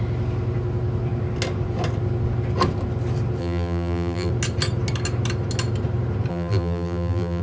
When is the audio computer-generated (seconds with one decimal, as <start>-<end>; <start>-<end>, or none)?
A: 3.4-4.3; 6.3-7.4